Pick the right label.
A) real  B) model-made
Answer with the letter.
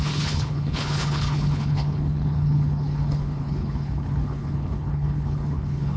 B